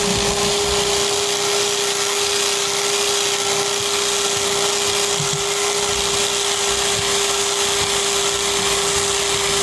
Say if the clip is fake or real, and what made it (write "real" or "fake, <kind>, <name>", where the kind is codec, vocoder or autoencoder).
real